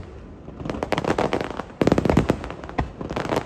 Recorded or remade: recorded